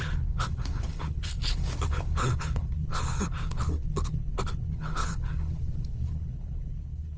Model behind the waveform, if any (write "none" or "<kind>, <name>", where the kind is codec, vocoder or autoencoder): codec, HILCodec